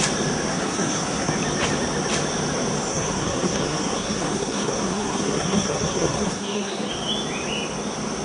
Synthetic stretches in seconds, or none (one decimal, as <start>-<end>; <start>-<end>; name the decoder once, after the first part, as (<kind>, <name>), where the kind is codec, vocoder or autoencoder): 0.5-1.3 (codec, SNAC); 2.9-6.9